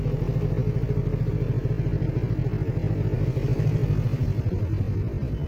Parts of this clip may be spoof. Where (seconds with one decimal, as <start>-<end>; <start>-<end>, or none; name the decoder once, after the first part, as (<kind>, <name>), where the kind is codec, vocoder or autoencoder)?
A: none